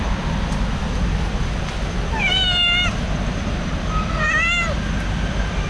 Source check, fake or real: real